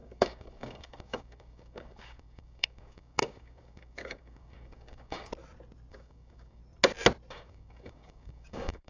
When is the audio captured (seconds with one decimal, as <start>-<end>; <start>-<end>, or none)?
5.3-5.9; 6.6-7.3